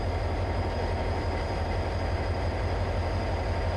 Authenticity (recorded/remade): remade